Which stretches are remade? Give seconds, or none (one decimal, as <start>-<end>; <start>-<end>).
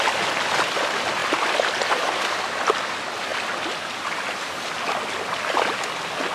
none